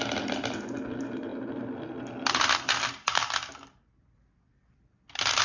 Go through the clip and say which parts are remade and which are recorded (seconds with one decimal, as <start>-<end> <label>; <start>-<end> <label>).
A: 0.0-5.4 recorded

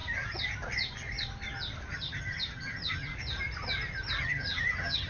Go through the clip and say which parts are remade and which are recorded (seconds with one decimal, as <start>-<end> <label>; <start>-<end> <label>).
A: 0.0-1.9 recorded; 1.9-3.1 remade; 3.1-4.2 recorded; 4.2-5.1 remade

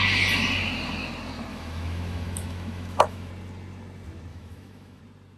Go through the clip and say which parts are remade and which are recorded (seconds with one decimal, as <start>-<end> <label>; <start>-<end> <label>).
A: 0.0-1.5 recorded; 1.5-3.3 remade; 3.3-4.3 recorded; 4.3-5.0 remade; 5.0-5.4 recorded